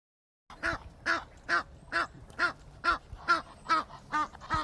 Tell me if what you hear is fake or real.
real